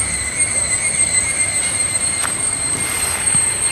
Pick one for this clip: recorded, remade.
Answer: recorded